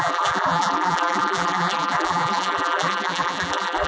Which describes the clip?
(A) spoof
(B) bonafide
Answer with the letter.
A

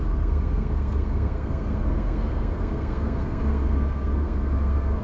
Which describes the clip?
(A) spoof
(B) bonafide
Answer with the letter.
A